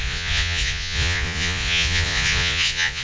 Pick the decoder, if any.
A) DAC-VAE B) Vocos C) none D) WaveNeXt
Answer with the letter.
B